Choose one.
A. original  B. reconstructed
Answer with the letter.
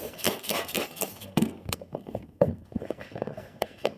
B